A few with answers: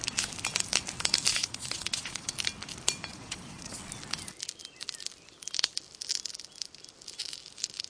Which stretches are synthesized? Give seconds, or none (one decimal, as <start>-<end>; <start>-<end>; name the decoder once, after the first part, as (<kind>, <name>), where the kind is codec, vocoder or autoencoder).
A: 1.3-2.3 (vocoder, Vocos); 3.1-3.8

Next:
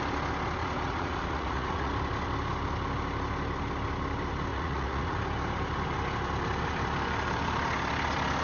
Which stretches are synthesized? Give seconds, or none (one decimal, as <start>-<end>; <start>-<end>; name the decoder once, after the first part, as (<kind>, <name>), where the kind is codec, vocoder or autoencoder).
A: 0.6-1.9 (vocoder, Vocos); 4.5-5.2

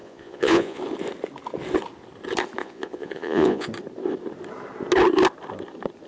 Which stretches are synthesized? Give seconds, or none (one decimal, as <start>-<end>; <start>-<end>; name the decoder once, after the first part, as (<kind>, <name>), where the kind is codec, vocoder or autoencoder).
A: 0.0-0.8 (vocoder, Vocos); 2.6-3.7

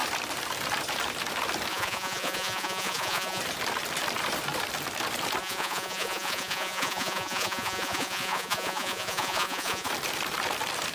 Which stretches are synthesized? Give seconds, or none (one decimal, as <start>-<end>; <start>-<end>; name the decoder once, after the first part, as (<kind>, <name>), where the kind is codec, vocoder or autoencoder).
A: 1.7-3.4 (vocoder, Vocos); 5.4-9.9

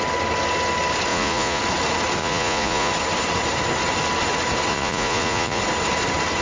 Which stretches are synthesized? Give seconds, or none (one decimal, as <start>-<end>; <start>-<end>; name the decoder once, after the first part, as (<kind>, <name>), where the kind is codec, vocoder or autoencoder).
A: 1.1-1.6 (vocoder, Vocos); 2.2-2.9; 4.7-5.6

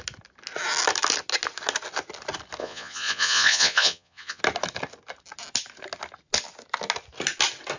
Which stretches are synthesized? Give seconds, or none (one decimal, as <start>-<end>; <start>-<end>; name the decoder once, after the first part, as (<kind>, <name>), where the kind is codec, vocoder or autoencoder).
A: 2.6-4.4 (vocoder, Vocos)